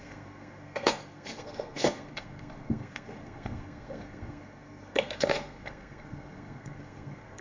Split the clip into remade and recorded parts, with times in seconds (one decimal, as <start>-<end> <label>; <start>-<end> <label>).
0.0-7.4 remade